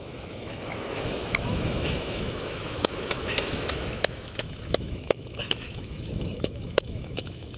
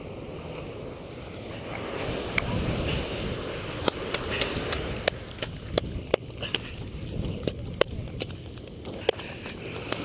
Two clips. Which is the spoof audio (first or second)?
first